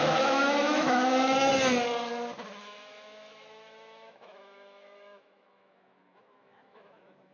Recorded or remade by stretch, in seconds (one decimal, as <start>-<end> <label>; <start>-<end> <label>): 0.0-1.5 remade; 1.5-2.6 recorded; 2.6-7.3 remade